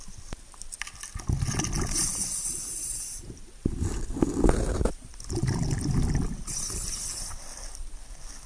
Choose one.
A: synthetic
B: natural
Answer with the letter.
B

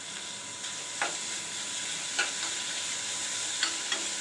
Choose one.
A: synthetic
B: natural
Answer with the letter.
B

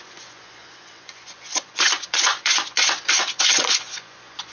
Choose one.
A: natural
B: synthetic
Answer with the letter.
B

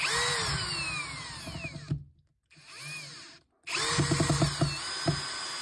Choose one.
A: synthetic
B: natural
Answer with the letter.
B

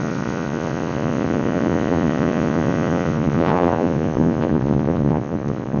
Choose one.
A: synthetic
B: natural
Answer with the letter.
A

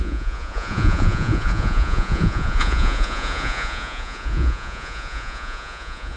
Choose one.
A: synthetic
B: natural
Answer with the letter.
A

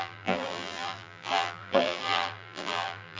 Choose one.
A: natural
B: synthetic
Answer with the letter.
B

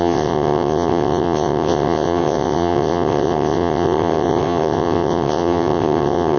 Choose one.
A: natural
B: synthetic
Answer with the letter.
B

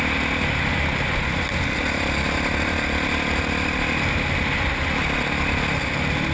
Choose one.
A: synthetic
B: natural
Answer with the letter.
B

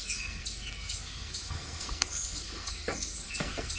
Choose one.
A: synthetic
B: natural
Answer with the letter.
A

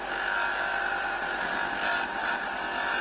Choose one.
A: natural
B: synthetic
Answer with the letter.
A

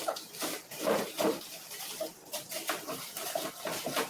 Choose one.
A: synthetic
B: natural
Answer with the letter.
A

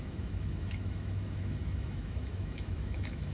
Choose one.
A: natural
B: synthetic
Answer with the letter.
B